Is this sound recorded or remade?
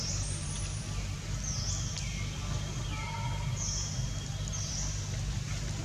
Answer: recorded